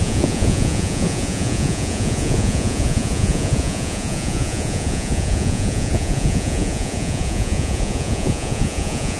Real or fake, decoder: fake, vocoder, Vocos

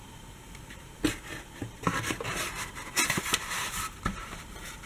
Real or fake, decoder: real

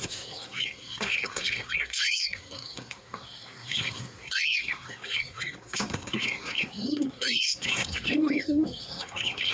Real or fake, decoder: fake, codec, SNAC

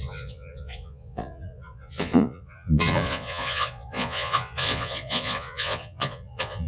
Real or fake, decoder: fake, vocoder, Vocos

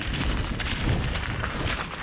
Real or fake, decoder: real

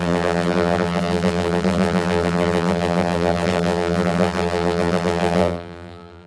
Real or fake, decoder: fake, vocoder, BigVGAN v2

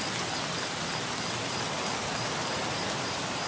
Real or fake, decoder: real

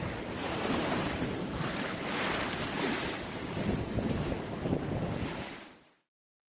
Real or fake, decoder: fake, vocoder, BigVGAN v2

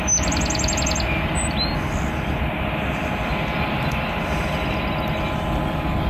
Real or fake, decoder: real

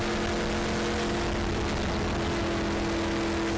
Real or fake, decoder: real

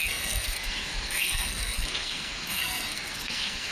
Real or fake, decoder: fake, codec, SNAC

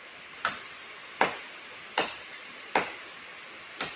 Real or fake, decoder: real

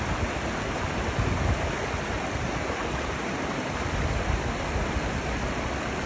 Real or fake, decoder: real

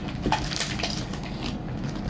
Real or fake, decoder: real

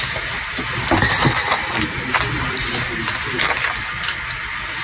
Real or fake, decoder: real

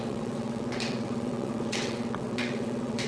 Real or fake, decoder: fake, vocoder, WaveNeXt